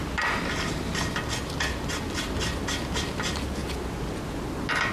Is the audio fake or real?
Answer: real